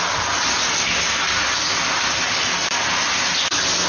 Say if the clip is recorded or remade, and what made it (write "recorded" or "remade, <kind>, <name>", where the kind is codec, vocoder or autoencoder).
recorded